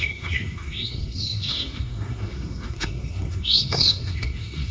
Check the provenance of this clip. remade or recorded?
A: remade